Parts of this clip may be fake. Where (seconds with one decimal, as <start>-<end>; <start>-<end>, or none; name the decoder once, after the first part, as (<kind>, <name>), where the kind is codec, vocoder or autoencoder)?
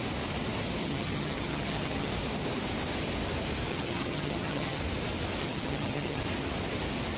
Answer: 0.8-2.1 (vocoder, HiFi-GAN); 3.7-4.8; 5.4-6.2